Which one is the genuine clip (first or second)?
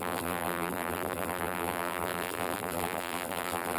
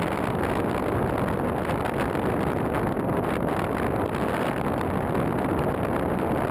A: second